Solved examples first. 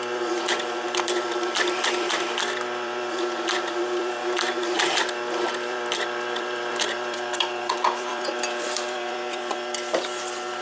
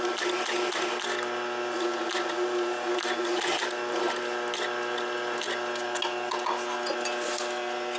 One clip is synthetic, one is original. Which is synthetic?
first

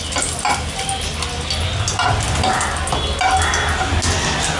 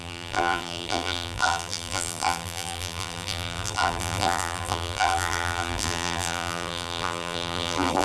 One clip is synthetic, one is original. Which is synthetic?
second